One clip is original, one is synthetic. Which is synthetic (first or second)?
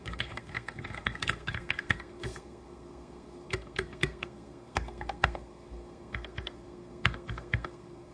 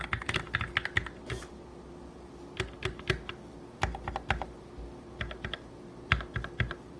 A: first